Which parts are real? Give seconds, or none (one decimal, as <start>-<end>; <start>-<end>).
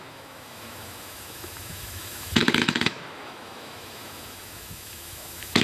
none